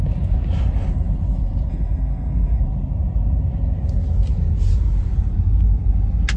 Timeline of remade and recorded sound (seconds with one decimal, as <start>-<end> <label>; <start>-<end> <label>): 0.0-1.7 recorded; 1.7-2.6 remade; 2.6-6.4 recorded